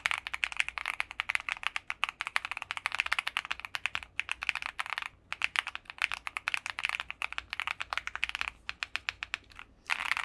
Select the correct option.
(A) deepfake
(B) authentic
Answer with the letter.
B